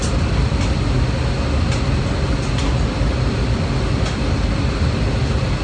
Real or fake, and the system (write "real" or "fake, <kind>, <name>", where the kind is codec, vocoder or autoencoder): real